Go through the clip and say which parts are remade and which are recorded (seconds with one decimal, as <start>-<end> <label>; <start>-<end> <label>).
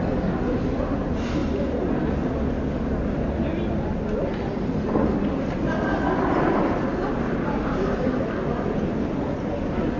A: 0.0-10.0 recorded